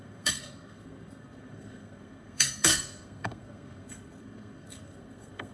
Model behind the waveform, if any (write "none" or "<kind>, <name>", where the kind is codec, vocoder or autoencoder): codec, SNAC